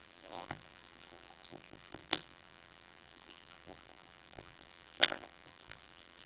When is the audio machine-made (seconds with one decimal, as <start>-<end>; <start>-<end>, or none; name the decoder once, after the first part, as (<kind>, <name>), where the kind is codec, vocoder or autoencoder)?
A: 0.0-6.3 (vocoder, BigVGAN v2)